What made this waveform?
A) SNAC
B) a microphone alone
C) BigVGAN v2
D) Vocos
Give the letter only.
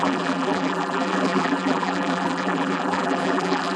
C